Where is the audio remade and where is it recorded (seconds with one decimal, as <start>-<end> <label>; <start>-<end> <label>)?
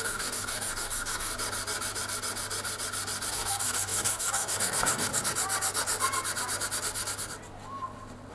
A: 0.0-1.3 remade; 1.3-3.3 recorded; 3.3-5.1 remade; 5.1-8.3 recorded